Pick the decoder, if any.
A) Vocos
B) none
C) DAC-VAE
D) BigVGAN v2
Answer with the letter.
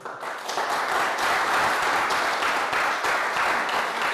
B